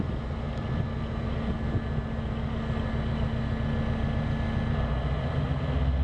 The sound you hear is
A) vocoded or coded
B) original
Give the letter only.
B